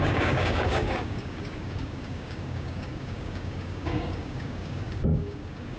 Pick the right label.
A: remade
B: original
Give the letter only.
A